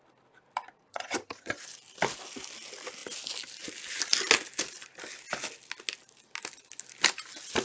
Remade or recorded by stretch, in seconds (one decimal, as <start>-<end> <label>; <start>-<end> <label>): 0.0-0.9 recorded; 0.9-1.6 remade; 1.6-7.6 recorded